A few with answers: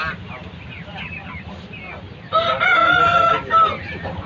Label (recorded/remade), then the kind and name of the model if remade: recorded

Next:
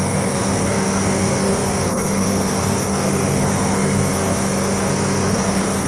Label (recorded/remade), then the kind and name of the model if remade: remade, codec, SNAC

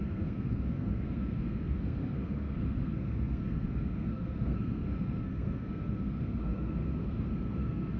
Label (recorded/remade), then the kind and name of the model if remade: remade, codec, SNAC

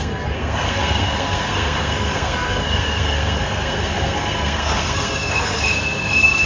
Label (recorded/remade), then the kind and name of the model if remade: remade, codec, SNAC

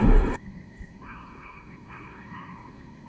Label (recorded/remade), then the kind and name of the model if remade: remade, codec, SNAC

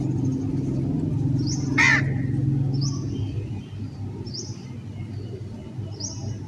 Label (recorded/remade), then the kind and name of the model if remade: recorded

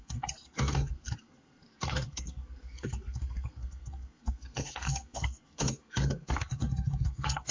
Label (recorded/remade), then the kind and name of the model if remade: remade, codec, SNAC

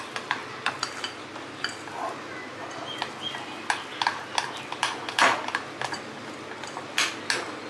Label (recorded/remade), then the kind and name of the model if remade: recorded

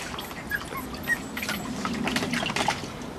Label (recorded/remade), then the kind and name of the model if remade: recorded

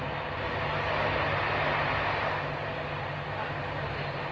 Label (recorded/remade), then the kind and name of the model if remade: recorded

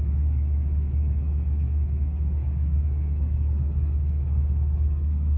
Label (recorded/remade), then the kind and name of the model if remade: remade, codec, SNAC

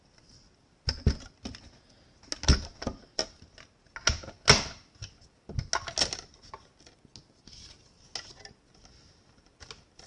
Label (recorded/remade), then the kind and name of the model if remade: recorded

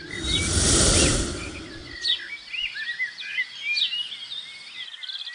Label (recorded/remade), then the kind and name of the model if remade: recorded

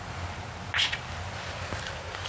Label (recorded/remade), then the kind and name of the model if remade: recorded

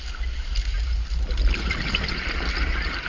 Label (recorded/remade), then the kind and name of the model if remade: recorded